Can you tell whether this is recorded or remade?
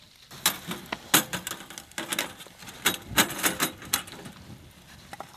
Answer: recorded